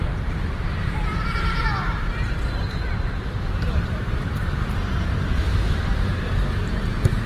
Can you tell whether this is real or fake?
fake